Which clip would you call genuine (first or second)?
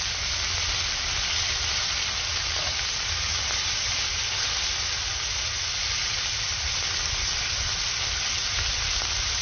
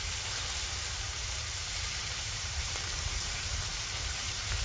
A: first